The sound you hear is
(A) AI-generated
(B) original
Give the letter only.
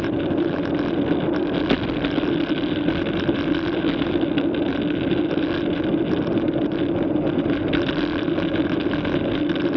B